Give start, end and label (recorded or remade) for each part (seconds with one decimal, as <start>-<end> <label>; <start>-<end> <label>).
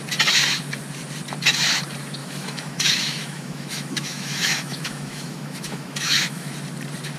0.0-2.2 recorded; 2.2-6.5 remade; 6.5-7.2 recorded